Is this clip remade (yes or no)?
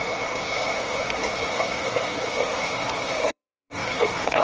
yes